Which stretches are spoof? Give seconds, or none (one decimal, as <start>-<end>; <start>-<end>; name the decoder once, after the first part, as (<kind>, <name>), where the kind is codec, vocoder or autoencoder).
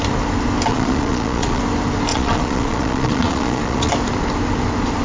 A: 0.7-1.6 (vocoder, Vocos); 2.1-3.9